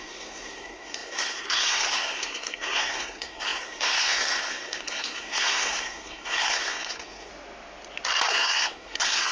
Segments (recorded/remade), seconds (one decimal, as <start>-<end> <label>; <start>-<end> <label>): 0.0-7.3 remade; 7.3-8.3 recorded; 8.3-9.3 remade